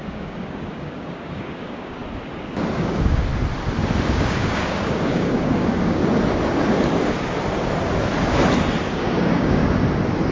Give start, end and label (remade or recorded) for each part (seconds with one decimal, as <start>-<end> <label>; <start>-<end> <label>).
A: 0.0-2.0 remade; 2.0-2.7 recorded; 2.7-3.3 remade; 3.3-4.1 recorded; 4.1-6.0 remade; 6.0-8.9 recorded; 8.9-9.6 remade; 9.6-10.3 recorded